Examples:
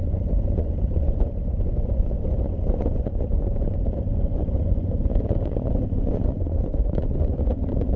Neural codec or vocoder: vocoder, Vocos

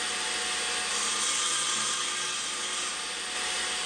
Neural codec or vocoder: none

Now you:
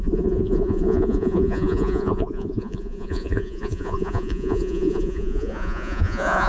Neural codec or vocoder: vocoder, Vocos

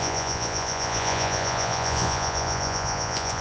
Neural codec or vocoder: vocoder, Vocos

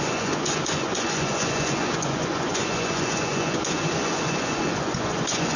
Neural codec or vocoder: vocoder, Vocos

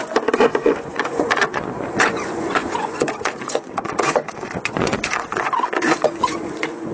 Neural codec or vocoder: vocoder, Vocos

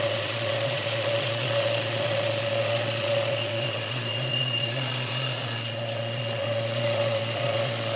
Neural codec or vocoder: vocoder, Vocos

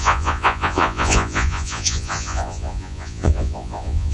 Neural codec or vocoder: vocoder, Vocos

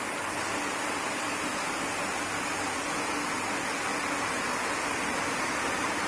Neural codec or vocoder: none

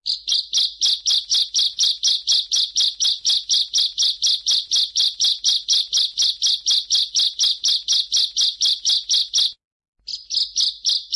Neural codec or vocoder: none